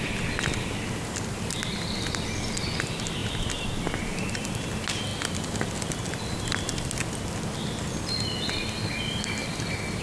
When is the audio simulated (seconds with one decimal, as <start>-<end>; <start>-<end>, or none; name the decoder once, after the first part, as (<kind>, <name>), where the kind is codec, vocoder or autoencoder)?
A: none